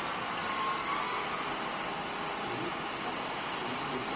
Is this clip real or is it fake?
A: real